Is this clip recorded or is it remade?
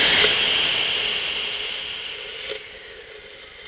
recorded